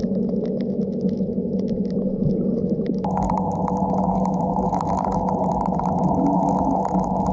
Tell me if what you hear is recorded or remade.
remade